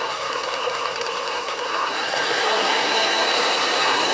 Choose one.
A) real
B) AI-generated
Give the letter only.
B